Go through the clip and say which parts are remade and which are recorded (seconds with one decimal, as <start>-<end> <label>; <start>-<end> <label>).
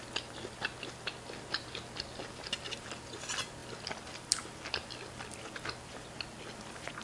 0.0-7.0 recorded